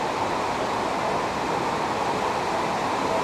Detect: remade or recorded recorded